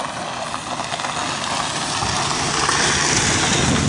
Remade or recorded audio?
recorded